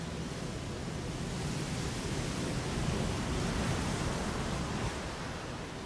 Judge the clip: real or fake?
real